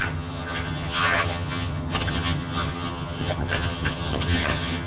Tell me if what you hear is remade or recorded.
remade